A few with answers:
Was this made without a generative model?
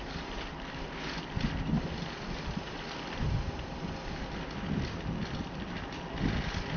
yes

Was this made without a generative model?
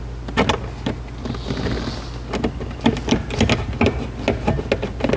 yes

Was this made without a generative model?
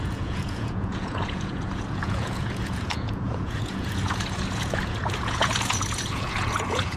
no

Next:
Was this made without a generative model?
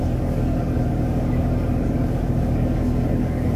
no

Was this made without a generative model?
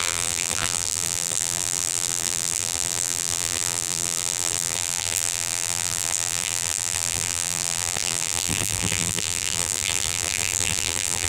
no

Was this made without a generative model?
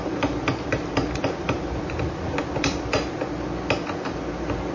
yes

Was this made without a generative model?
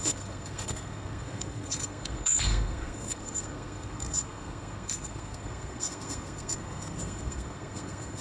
no